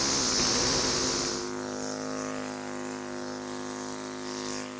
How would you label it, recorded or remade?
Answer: recorded